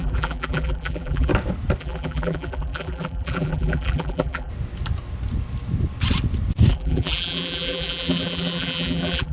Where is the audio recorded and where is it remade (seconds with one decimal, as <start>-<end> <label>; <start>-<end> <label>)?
0.0-1.3 remade; 1.3-1.8 recorded; 1.8-4.5 remade; 4.5-6.7 recorded; 6.7-9.3 remade